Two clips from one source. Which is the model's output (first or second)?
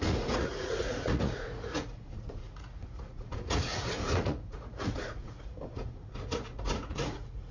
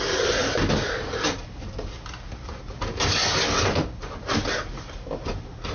first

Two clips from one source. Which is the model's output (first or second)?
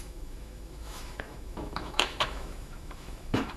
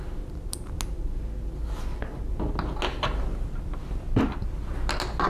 first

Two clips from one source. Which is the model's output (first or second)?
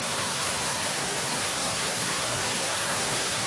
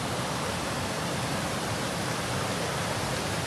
first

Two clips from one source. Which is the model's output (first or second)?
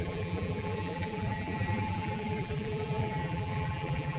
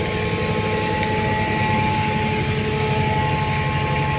first